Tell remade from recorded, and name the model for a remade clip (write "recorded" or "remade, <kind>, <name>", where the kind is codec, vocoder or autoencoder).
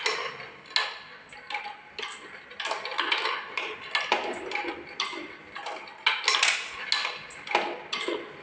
recorded